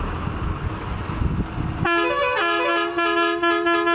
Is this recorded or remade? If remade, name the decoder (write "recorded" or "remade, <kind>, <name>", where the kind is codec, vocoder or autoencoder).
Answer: recorded